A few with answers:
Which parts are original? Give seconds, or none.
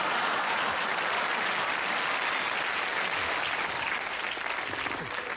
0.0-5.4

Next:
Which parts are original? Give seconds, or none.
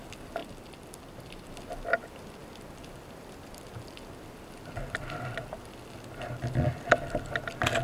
0.0-7.8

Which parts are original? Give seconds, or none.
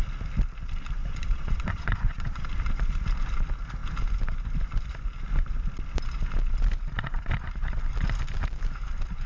0.0-1.0; 2.4-9.3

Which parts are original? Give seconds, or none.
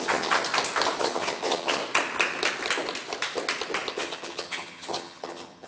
0.4-1.0; 1.8-3.9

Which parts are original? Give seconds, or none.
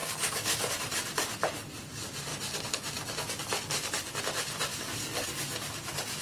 0.7-4.7; 5.3-6.2